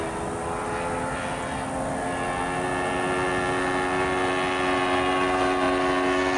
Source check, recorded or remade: recorded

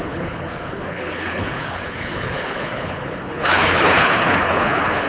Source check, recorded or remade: remade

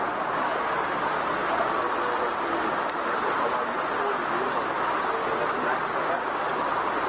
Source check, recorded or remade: recorded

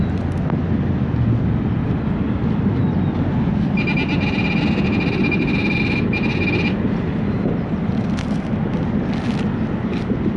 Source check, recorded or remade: recorded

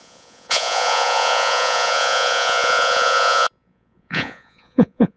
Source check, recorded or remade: remade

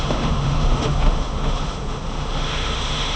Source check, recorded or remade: remade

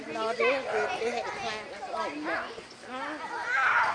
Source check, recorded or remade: recorded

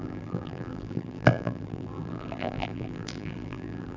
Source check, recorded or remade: remade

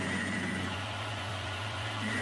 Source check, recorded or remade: remade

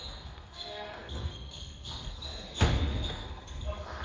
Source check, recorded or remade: remade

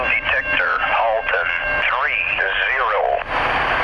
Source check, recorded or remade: recorded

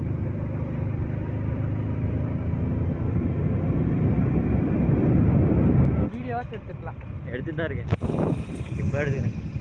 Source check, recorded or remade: recorded